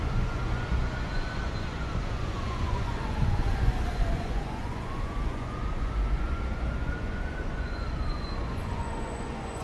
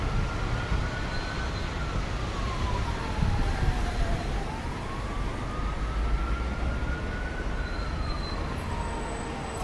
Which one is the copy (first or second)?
first